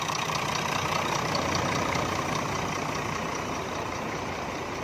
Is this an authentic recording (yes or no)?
no